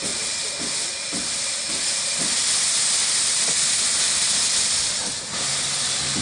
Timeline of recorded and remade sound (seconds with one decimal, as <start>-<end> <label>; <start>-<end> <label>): 0.0-6.2 recorded